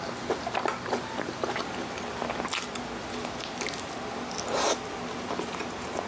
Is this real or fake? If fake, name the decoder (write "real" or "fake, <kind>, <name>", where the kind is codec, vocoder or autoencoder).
real